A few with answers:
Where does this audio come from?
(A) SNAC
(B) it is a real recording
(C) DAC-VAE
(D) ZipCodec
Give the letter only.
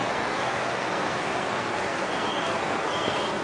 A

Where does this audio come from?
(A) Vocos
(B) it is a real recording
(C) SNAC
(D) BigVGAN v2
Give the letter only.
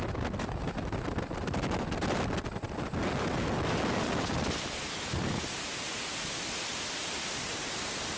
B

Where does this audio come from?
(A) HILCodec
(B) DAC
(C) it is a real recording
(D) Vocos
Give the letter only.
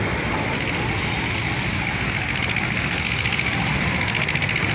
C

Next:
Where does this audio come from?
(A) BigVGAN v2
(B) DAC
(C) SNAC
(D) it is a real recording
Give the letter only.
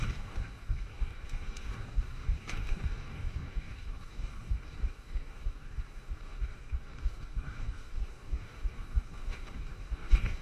B